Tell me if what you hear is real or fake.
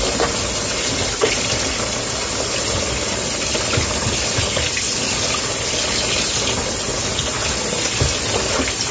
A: real